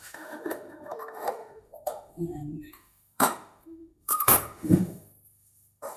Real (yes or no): no